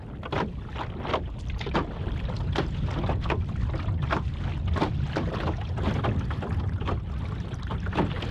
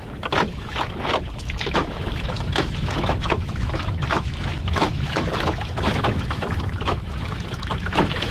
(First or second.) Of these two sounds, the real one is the first